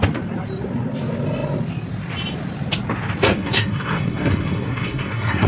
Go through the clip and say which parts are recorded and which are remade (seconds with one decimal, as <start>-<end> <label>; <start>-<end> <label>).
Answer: 0.0-3.3 recorded; 3.3-5.5 remade